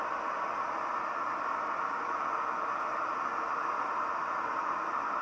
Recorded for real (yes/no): yes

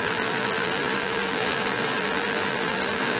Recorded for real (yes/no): no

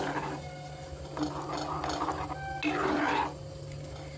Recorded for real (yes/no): yes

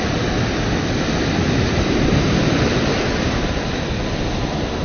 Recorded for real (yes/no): yes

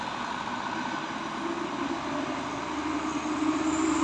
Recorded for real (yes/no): yes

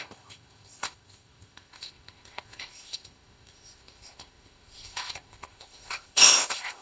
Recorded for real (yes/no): no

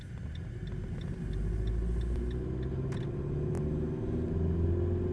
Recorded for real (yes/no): yes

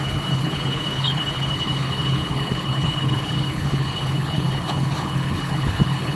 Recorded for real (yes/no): no